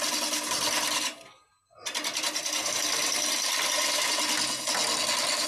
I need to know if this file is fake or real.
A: real